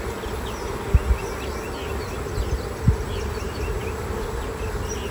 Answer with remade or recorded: recorded